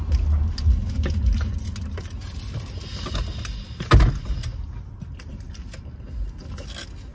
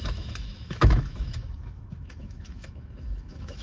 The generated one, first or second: second